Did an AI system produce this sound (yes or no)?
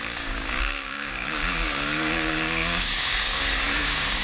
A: yes